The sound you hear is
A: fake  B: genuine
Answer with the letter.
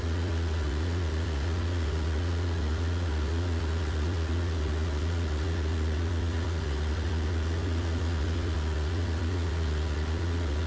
A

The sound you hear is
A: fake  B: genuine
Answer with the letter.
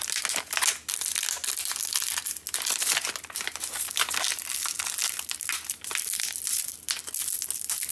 B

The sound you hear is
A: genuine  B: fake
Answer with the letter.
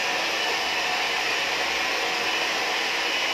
A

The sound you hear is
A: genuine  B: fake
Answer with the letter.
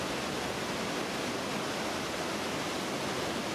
A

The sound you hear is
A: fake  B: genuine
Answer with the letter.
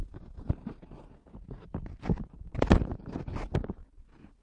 B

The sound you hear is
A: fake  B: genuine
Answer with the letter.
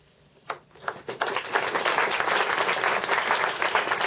B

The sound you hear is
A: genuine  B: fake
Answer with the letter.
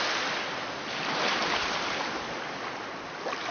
A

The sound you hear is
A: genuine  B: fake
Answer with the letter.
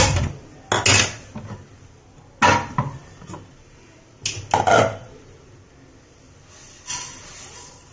A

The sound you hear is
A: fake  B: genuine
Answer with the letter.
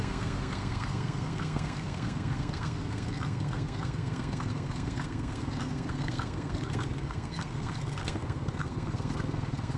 A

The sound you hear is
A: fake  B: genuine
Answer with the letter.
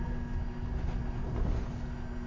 B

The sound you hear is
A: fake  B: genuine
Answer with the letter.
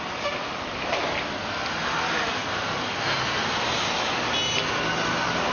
B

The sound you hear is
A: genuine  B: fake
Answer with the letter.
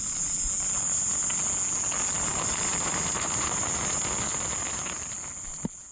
A